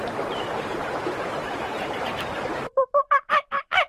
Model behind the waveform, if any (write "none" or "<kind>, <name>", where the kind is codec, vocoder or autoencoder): vocoder, BigVGAN v2